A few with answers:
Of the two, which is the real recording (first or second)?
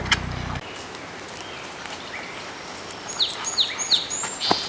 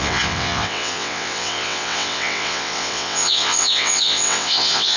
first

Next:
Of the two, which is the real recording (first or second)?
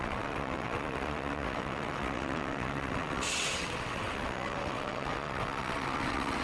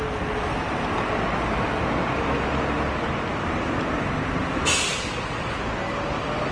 second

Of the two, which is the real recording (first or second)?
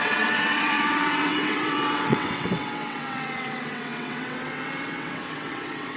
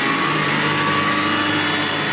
second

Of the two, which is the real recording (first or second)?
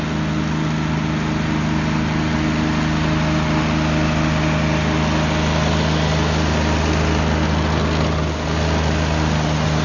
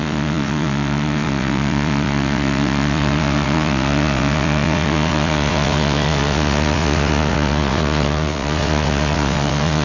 first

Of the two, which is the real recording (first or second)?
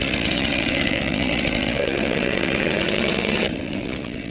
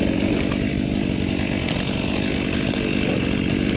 second